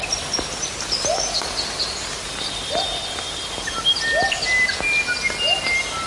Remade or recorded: recorded